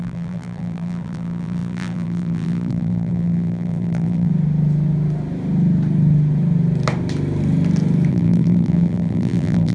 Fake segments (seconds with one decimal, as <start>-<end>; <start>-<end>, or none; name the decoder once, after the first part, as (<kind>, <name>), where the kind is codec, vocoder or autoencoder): 0.0-4.3 (vocoder, BigVGAN v2); 8.1-9.7